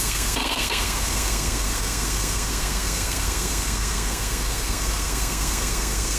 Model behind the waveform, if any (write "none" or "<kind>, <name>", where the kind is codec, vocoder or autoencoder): codec, SNAC